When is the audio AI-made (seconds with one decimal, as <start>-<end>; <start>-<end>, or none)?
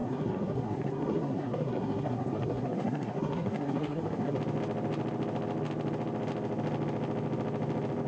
0.0-4.4